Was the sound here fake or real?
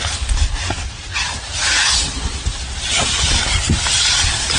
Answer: real